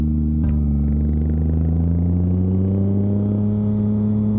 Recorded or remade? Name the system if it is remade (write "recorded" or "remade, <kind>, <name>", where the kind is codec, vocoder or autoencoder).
recorded